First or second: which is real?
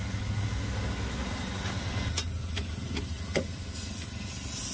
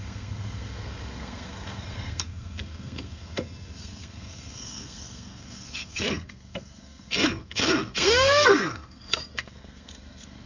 first